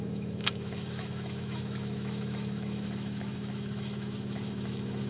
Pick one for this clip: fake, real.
fake